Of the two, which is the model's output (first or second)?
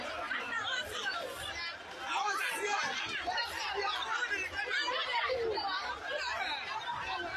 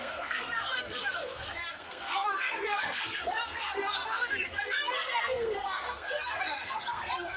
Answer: second